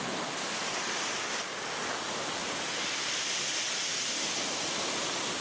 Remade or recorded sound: recorded